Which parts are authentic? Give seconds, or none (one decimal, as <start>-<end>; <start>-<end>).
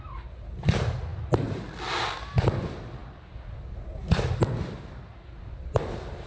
0.0-6.3